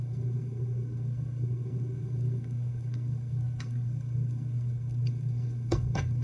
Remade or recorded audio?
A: remade